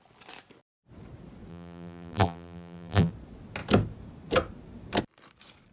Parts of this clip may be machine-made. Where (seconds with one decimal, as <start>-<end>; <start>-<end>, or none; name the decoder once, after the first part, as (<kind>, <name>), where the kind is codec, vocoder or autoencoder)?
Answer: 1.5-3.1 (vocoder, BigVGAN v2)